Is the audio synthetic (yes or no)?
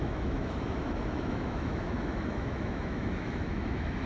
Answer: yes